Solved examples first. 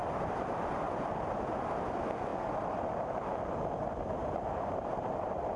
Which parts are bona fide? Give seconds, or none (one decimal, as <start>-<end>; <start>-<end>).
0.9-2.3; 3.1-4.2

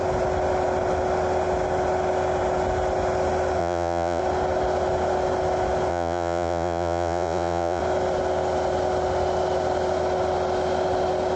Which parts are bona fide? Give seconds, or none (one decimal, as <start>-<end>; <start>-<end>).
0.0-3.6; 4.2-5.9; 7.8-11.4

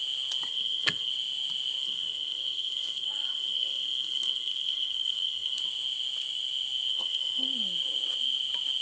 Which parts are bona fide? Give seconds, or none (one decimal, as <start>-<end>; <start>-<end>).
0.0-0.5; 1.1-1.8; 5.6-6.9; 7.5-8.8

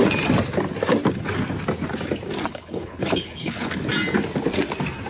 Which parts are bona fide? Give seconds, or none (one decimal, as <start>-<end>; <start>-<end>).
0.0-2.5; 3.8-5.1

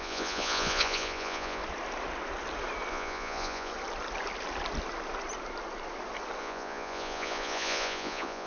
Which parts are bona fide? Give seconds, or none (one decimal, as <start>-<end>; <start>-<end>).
1.6-2.9; 3.7-6.4

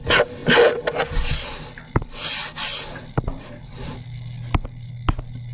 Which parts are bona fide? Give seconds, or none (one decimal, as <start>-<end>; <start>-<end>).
0.0-5.5